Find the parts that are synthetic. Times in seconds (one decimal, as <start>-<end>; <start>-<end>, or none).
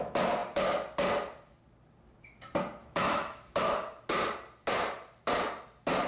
2.8-3.7